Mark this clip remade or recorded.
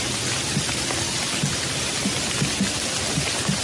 recorded